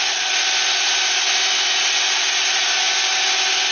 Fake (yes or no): no